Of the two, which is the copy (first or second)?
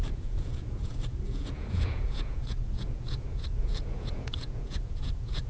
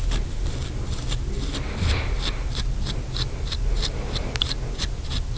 first